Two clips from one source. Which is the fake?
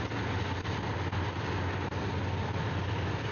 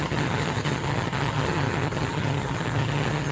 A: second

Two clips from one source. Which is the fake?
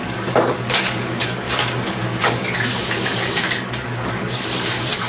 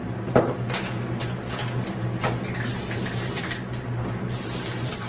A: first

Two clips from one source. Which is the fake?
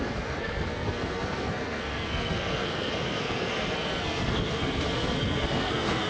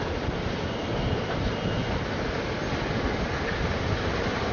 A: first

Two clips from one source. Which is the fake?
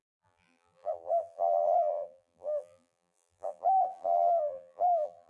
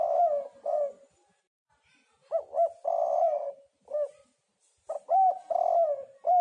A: first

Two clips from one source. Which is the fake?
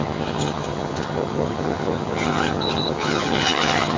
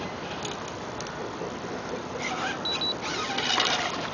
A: first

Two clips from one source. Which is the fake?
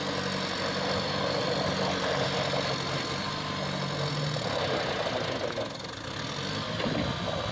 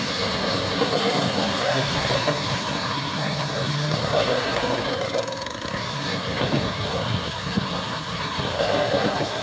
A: second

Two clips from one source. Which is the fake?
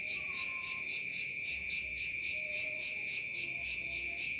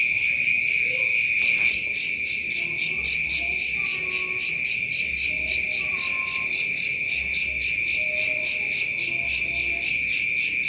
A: first